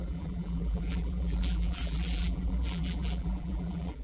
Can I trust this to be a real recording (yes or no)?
no